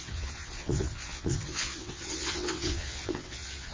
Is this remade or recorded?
remade